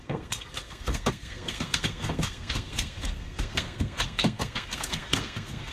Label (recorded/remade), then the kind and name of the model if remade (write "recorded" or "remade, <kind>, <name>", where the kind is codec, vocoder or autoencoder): remade, codec, SNAC